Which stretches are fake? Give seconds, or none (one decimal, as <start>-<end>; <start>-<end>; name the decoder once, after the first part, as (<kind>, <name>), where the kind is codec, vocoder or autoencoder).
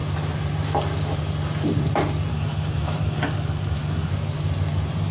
2.3-4.1 (codec, DAC)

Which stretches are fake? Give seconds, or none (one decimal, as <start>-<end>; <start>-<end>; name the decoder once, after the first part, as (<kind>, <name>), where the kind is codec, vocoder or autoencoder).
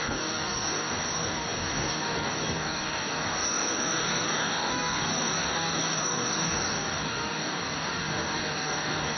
0.0-9.2 (codec, DAC)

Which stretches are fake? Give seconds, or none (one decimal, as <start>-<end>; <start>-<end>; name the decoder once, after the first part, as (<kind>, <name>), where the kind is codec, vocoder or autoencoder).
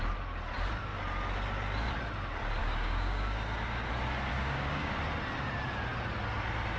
2.6-3.9 (codec, DAC); 4.3-4.9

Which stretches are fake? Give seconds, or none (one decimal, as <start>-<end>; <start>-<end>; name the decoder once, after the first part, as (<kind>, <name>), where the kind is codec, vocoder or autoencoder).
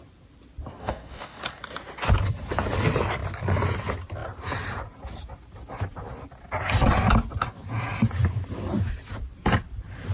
0.8-1.4 (codec, DAC)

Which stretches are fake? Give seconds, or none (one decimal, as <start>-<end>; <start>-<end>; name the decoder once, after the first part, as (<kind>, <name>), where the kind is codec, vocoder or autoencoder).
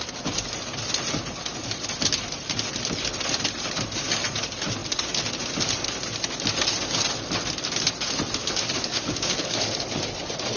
8.4-9.7 (codec, DAC)